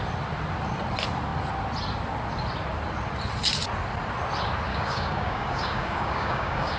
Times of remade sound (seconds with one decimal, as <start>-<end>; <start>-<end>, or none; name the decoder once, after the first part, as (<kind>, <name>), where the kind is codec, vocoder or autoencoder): 4.7-6.8 (codec, DAC)